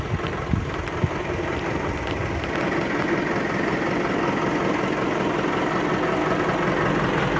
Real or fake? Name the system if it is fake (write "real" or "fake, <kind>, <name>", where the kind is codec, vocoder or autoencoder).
real